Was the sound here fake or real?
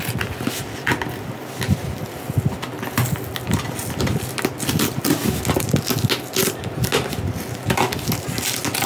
real